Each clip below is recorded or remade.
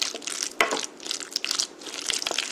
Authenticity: recorded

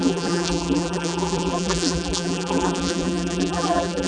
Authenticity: remade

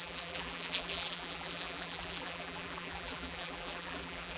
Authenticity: remade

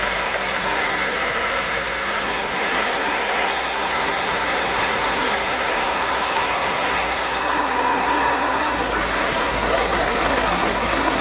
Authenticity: remade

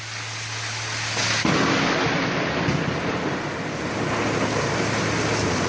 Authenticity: recorded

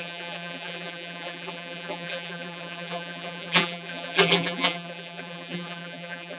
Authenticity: remade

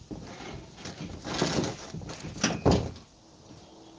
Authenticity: recorded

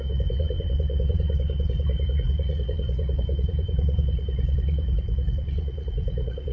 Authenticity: remade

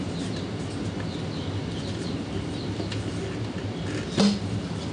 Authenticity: recorded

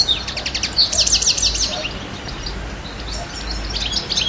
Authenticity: recorded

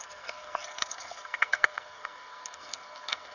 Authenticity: remade